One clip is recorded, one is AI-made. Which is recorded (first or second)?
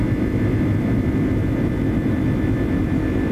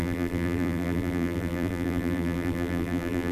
first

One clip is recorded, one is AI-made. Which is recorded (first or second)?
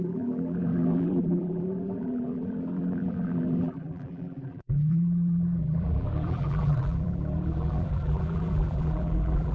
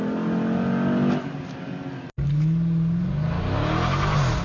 second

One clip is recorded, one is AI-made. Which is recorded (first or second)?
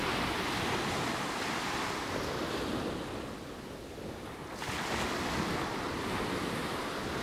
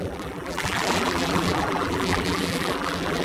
first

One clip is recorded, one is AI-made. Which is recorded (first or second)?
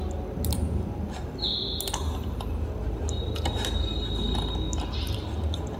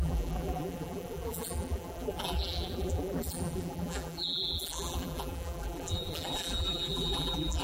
first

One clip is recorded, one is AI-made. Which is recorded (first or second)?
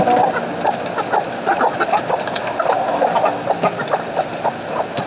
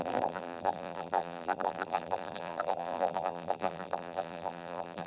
first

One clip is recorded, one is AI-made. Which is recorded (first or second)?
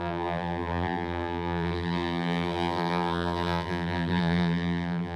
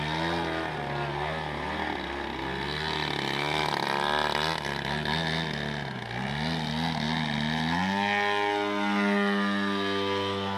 second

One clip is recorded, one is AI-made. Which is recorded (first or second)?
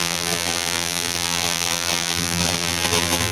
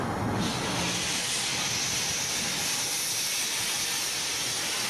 second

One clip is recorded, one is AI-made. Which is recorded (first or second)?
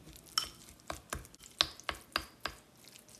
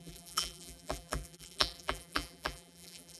first